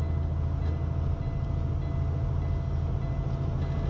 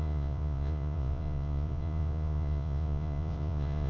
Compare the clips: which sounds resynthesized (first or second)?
second